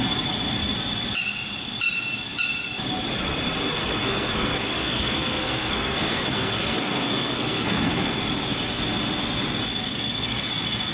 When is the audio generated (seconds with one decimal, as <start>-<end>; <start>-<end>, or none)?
3.8-8.2; 9.9-10.5